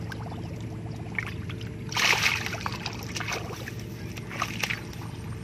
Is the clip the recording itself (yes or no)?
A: yes